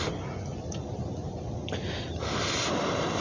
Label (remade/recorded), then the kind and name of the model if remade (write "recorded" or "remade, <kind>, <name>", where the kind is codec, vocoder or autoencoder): recorded